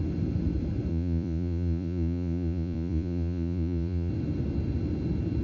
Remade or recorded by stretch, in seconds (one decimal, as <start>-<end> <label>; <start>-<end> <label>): 0.0-0.9 recorded; 0.9-4.1 remade; 4.1-5.4 recorded